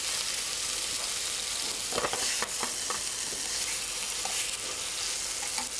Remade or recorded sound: recorded